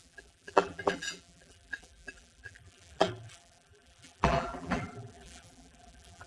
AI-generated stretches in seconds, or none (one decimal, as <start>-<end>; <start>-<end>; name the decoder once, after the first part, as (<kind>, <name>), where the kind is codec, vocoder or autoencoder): 0.0-6.3 (vocoder, BigVGAN v2)